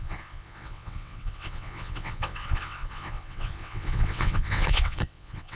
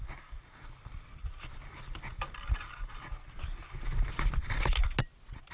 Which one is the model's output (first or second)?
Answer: first